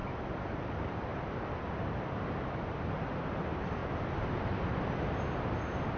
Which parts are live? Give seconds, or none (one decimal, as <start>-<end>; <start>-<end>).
0.0-0.5; 1.1-3.3; 3.8-5.4

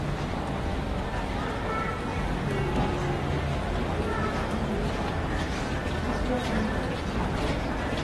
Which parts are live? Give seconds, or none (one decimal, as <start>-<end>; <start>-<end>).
0.0-8.0

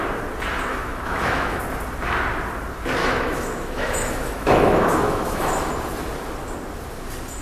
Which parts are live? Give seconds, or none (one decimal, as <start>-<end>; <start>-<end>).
0.0-0.7; 1.6-3.0; 5.7-7.4